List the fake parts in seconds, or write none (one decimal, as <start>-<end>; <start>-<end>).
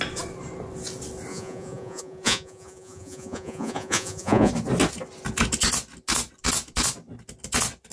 1.3-4.5